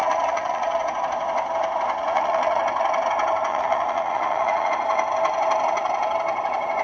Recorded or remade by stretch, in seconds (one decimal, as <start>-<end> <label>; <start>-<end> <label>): 0.0-0.9 remade; 0.9-2.0 recorded; 2.0-2.6 remade; 2.6-3.5 recorded; 3.5-4.7 remade; 4.7-6.8 recorded